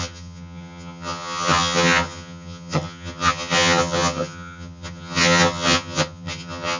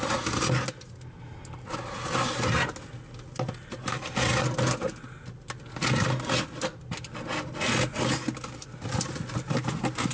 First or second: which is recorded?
second